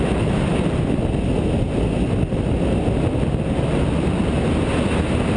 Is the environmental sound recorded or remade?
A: recorded